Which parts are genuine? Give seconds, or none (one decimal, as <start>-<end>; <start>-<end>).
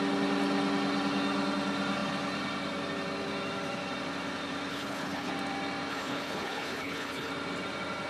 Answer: 0.0-4.7; 5.3-5.9; 7.3-8.1